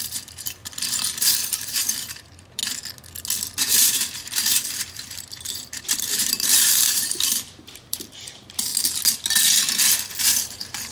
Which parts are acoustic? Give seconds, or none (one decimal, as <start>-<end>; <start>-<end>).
0.6-1.2; 2.6-3.6; 8.7-10.2